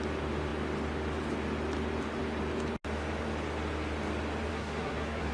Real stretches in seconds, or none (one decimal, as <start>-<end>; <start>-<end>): 0.0-4.5